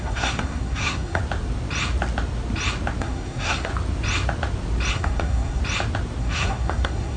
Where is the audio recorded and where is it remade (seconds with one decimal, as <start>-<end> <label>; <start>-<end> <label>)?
0.0-1.2 remade; 1.2-3.0 recorded; 3.0-3.7 remade; 3.7-4.9 recorded; 4.9-5.6 remade; 5.6-6.2 recorded; 6.2-7.2 remade